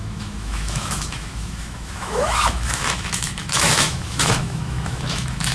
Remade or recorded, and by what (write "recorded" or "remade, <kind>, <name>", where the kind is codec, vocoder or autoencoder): remade, autoencoder, DAC-VAE